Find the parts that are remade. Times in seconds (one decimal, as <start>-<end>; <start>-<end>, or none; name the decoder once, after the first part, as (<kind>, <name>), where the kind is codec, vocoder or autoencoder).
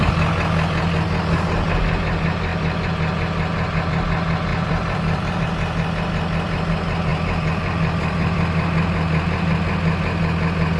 4.5-5.4 (vocoder, BigVGAN v2); 7.1-9.5